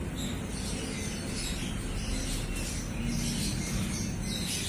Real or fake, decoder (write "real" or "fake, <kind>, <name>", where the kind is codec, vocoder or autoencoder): real